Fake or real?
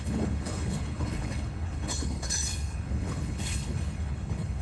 fake